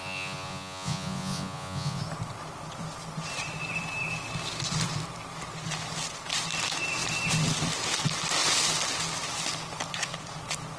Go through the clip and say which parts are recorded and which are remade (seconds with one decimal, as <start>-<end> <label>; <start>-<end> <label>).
0.0-2.0 remade; 2.0-10.8 recorded